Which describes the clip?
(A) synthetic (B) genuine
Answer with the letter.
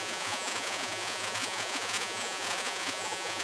A